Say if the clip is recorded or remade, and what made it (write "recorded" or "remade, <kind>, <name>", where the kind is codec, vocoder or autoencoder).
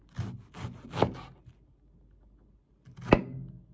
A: recorded